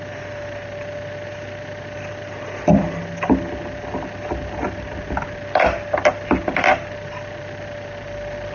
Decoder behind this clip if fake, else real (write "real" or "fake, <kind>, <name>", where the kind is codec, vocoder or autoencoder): real